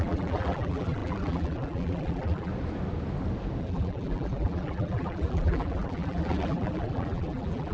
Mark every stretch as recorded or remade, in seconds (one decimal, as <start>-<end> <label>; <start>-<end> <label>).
0.0-2.5 remade; 2.5-3.6 recorded; 3.6-7.7 remade